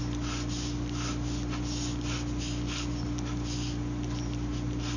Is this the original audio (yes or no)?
yes